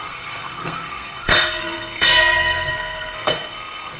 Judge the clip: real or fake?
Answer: fake